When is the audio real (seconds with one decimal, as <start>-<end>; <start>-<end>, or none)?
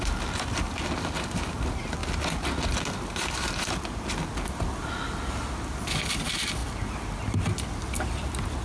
0.0-8.6